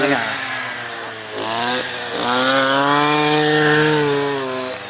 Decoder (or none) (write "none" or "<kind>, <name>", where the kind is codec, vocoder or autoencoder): none